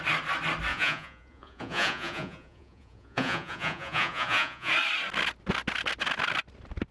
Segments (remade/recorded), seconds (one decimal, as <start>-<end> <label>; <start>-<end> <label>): 0.0-0.7 recorded; 0.7-4.7 remade; 4.7-6.9 recorded